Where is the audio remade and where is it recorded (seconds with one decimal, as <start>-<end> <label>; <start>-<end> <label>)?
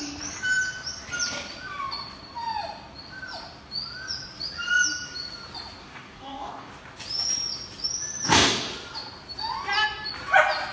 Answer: 0.0-5.8 recorded; 5.8-6.7 remade; 6.7-10.7 recorded